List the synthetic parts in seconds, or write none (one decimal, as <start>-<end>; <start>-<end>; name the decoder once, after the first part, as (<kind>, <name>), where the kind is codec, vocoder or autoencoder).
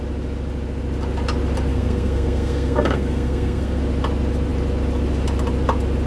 1.7-3.8 (codec, SNAC)